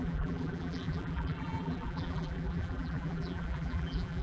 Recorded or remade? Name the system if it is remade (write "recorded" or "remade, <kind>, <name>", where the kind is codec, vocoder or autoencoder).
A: remade, vocoder, BigVGAN v2